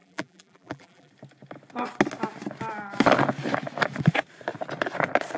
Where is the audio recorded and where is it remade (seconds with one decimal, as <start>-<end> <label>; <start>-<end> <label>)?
0.0-1.1 remade; 1.1-5.4 recorded